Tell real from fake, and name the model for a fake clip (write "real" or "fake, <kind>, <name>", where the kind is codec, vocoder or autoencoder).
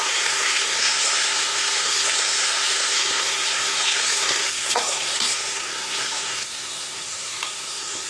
fake, codec, SNAC